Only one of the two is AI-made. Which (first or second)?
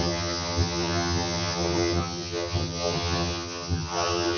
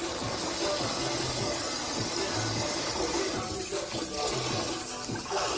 first